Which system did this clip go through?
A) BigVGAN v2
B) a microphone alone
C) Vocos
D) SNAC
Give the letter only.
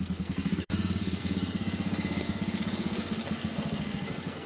D